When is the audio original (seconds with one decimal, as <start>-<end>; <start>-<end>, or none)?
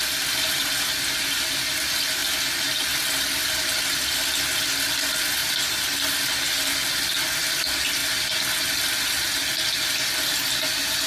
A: 0.0-11.1